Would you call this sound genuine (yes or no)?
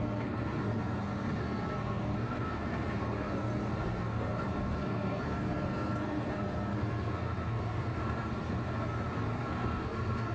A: no